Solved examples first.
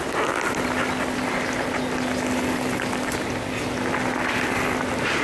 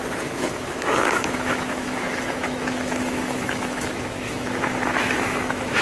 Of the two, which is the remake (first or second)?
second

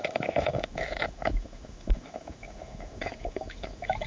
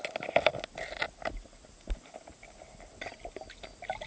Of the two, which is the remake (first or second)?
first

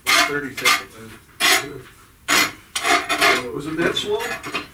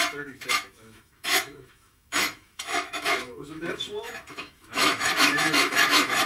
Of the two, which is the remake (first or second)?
second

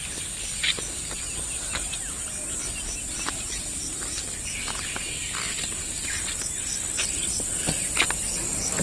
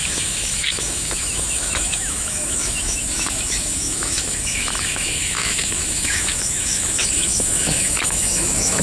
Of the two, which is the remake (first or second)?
second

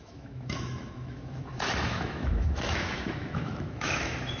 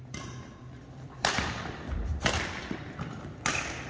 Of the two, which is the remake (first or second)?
first